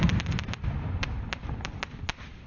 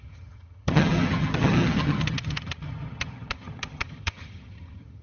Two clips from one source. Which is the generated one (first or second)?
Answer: second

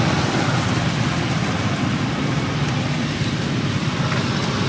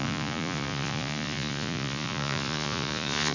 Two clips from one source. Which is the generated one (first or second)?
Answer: second